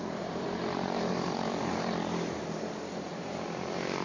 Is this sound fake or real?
fake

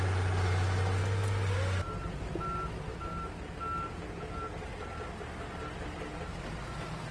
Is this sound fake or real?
real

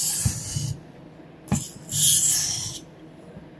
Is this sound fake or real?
real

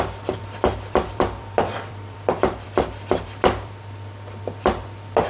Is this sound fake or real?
fake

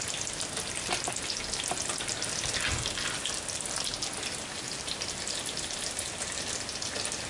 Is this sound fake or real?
real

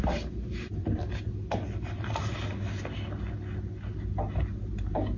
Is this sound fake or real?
real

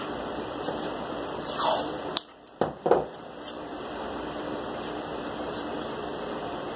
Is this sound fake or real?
fake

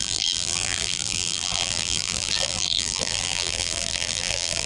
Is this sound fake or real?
fake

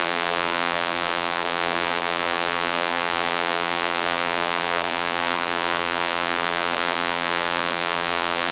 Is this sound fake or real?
fake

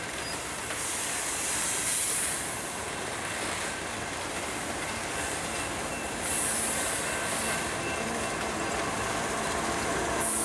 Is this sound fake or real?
fake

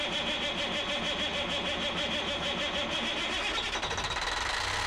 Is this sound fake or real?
real